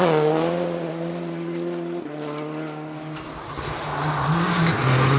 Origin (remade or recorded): recorded